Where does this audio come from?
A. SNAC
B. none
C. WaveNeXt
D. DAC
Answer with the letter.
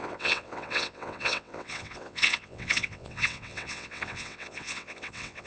C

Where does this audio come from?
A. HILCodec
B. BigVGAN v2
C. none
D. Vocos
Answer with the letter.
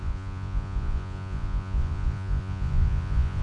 D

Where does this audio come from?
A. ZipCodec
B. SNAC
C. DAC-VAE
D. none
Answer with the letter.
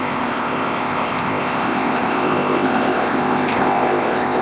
A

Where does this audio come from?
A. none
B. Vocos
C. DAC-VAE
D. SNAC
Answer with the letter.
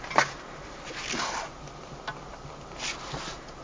A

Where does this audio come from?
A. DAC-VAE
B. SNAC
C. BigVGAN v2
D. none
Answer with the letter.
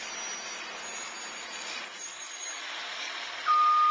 D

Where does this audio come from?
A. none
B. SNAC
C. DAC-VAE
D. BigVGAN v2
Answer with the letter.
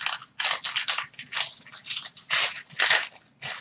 A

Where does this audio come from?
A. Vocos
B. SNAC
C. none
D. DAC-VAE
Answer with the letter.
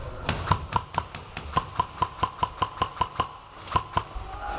C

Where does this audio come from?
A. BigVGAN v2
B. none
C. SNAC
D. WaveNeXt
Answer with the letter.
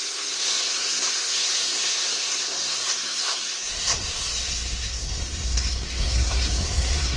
C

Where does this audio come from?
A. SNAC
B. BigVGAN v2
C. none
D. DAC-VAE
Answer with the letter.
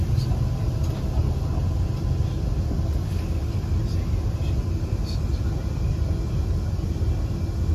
C